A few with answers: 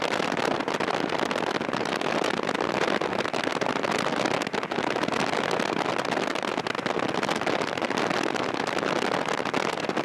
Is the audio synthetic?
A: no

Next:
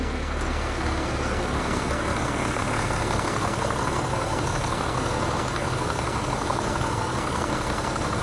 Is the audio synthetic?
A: yes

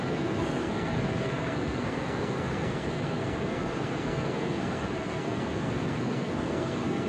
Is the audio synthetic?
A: yes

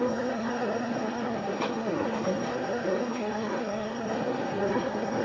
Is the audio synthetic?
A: yes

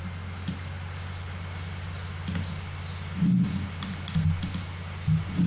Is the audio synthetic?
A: no